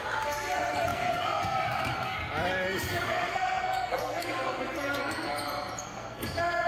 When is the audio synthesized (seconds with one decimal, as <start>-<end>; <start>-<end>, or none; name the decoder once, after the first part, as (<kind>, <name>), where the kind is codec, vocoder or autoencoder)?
0.0-2.2 (codec, SNAC); 3.0-5.3; 5.8-6.7